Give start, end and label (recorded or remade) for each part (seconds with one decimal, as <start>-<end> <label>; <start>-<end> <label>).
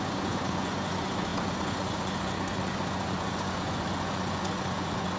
0.0-5.2 remade